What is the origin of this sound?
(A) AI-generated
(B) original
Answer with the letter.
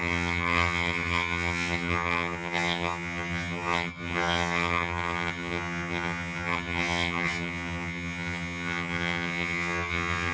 A